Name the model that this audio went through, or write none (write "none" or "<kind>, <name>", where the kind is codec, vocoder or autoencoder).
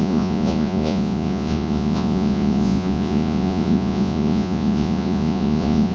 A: vocoder, Vocos